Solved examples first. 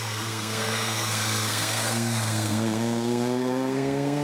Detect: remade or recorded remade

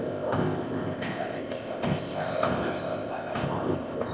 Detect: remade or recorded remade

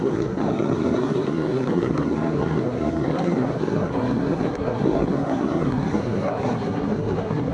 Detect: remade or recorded remade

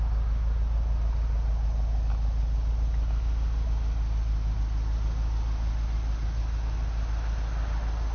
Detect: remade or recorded recorded